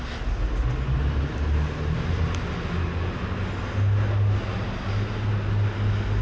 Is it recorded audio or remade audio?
recorded